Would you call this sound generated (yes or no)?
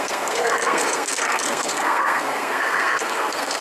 yes